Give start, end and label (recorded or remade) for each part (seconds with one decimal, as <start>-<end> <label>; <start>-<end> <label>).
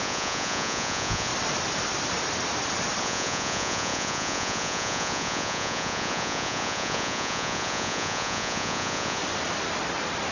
0.0-1.3 remade; 1.3-3.0 recorded; 3.0-9.2 remade; 9.2-10.3 recorded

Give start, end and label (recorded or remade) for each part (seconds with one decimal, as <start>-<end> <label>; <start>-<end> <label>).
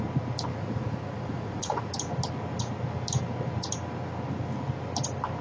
0.0-0.5 recorded; 0.5-1.9 remade; 1.9-5.4 recorded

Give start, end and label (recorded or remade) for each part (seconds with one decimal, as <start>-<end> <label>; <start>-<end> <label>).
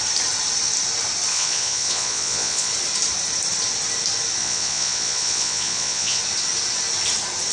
0.0-1.3 recorded; 1.3-2.7 remade; 2.7-4.4 recorded; 4.4-6.2 remade; 6.2-7.5 recorded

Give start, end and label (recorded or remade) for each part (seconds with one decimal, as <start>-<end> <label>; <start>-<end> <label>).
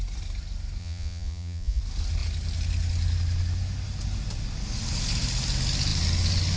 0.0-0.8 recorded; 0.8-1.8 remade; 1.8-6.6 recorded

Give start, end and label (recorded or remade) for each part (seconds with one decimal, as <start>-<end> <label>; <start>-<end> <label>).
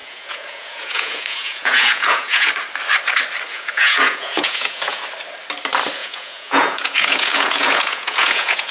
0.0-2.5 remade; 2.5-3.5 recorded; 3.5-5.0 remade; 5.0-6.0 recorded; 6.0-8.7 remade